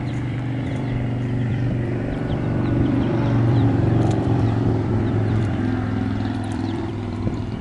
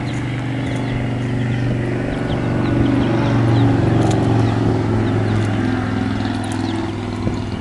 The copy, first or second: first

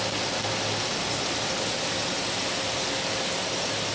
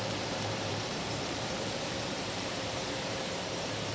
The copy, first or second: second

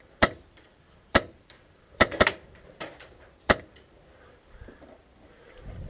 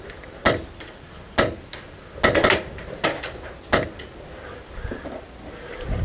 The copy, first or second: first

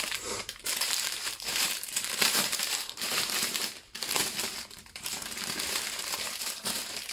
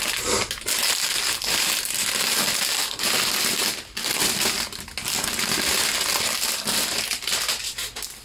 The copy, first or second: first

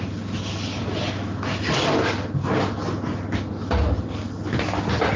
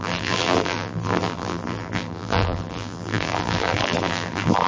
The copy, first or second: second